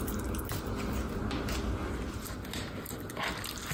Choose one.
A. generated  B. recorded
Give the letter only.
B